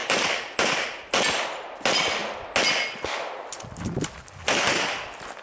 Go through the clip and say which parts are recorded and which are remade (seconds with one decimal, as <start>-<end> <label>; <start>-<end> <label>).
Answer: 0.0-5.4 recorded